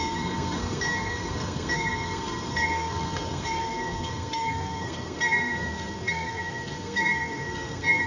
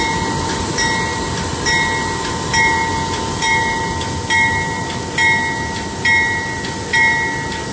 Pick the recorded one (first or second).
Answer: second